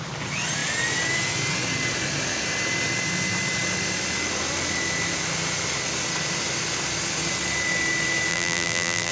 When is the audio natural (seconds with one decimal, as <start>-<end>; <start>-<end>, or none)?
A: 0.0-8.3